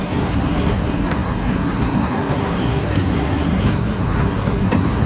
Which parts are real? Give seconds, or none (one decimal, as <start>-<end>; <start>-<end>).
none